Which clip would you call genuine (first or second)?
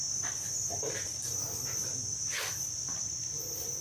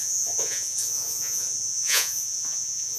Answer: first